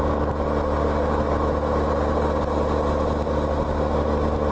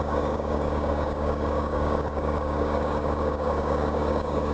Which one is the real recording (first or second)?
first